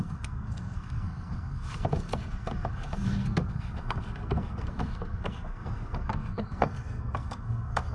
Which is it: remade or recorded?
remade